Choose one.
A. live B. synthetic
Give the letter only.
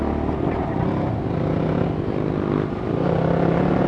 A